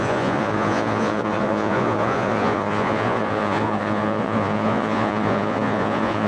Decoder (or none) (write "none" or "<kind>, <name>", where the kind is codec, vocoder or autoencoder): vocoder, Vocos